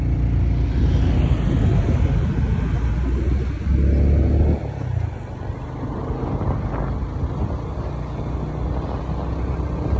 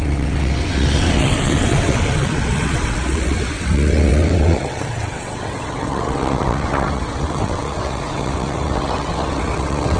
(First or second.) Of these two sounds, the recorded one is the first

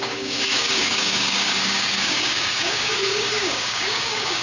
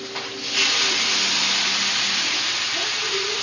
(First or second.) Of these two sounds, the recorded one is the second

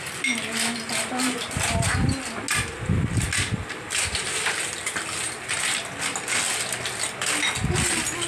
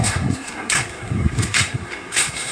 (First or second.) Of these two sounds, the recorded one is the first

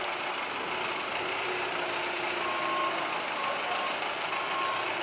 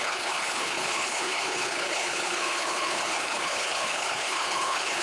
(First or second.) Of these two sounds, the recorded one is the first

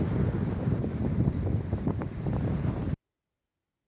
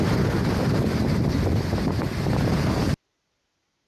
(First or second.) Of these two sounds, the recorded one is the second